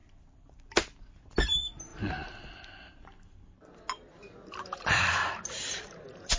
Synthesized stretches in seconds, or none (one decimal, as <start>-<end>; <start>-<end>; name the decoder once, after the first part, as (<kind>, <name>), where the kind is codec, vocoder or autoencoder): 0.0-1.3 (vocoder, BigVGAN v2)